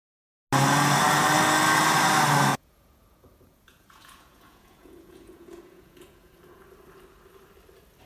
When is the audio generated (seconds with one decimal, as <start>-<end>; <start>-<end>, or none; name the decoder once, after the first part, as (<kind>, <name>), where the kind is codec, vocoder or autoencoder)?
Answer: 2.5-6.6 (vocoder, Vocos)